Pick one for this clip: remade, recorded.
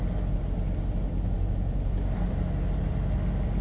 recorded